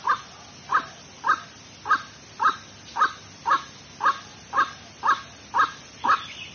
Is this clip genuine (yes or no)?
yes